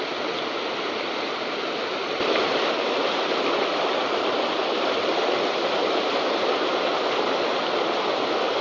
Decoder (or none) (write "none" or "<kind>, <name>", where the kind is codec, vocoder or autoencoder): none